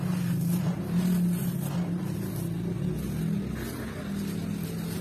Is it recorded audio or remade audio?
recorded